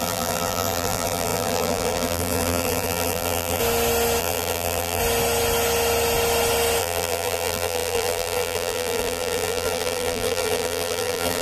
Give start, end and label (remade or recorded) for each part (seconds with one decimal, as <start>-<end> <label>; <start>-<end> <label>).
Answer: 0.0-3.6 remade; 3.6-4.2 recorded; 4.2-5.0 remade; 5.0-6.8 recorded; 6.8-11.4 remade